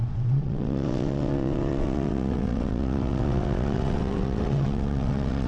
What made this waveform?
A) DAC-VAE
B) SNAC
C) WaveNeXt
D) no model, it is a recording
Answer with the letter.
C